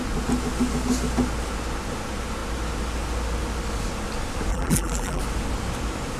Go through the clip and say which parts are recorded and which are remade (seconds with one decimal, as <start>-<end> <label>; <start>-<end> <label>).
0.0-4.5 recorded; 4.5-5.2 remade; 5.2-6.2 recorded